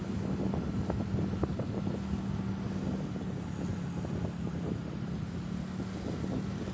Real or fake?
real